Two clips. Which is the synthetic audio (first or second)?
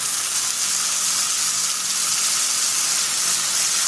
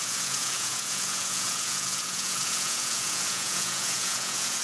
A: second